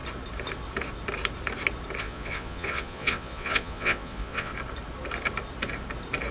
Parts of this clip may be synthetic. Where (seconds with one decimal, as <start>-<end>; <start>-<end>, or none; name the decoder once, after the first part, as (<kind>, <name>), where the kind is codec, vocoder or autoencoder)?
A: 2.0-4.5 (vocoder, Vocos)